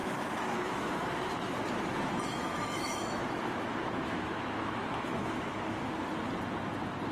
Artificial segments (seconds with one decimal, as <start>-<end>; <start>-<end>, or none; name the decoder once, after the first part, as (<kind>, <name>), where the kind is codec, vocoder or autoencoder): 0.0-1.1 (autoencoder, DAC-VAE); 2.3-5.9